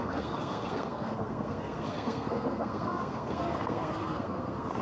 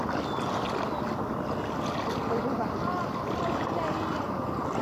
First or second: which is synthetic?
first